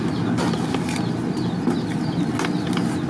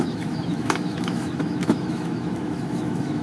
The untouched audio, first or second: first